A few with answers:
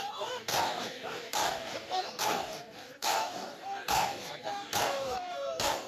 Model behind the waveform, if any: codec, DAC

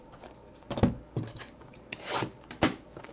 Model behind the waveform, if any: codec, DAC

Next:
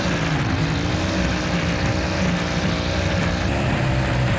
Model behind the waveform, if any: none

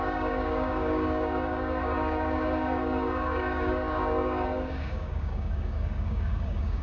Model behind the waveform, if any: codec, DAC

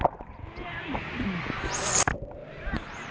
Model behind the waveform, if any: none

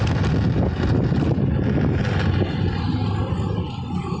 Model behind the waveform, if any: none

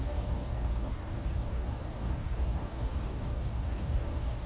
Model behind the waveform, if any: codec, DAC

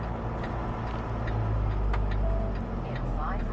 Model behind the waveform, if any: none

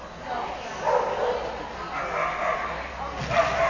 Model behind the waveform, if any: none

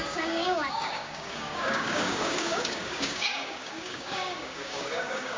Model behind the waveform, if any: codec, DAC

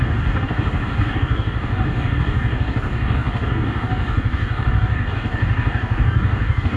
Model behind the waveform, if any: codec, DAC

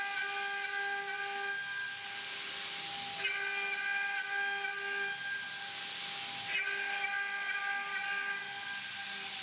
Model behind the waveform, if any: none